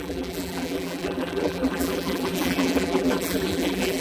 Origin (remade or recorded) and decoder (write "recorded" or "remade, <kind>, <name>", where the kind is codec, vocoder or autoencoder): remade, vocoder, BigVGAN v2